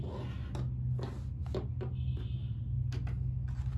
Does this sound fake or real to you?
real